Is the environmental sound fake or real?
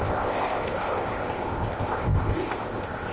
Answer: fake